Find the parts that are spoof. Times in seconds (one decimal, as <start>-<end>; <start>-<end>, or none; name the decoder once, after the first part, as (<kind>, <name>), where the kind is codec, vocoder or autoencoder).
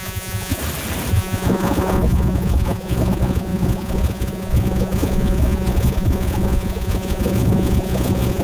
0.0-0.6 (vocoder, Vocos); 1.1-8.4